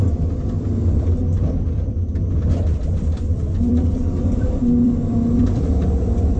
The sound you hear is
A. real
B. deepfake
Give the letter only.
B